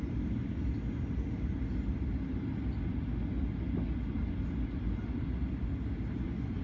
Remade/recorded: recorded